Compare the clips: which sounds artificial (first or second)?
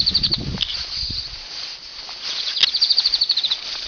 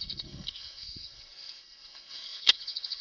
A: second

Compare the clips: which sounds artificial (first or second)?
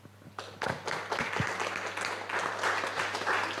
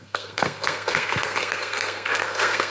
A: second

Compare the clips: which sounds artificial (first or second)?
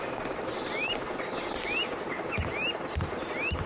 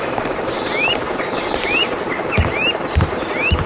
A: second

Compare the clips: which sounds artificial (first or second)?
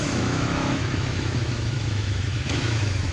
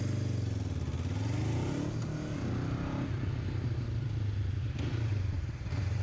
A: first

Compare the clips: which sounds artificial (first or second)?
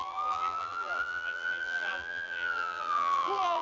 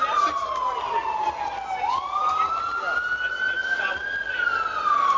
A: first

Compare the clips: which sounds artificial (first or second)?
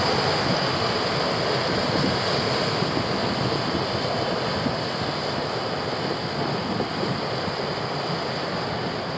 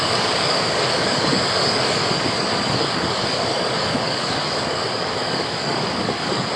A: second